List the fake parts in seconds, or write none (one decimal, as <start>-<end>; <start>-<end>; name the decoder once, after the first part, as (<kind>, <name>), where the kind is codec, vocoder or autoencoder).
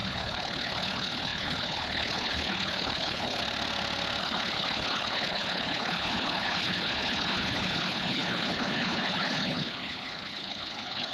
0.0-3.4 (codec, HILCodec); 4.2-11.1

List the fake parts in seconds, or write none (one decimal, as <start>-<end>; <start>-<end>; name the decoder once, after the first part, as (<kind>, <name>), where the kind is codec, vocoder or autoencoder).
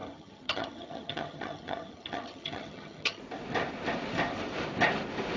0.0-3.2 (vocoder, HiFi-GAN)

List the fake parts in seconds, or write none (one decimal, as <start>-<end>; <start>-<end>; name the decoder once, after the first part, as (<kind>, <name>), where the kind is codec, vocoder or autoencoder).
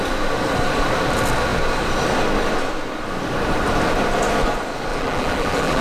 4.9-5.8 (vocoder, BigVGAN v2)